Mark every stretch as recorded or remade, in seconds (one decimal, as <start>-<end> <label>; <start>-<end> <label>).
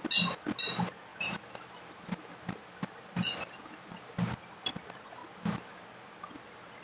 0.0-6.8 recorded